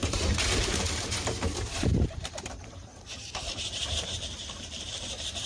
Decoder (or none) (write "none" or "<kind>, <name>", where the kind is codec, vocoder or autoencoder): vocoder, BigVGAN v2